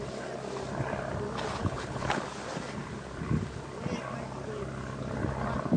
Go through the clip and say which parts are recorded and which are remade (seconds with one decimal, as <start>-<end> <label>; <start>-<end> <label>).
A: 0.0-1.6 recorded; 1.6-2.2 remade; 2.2-5.8 recorded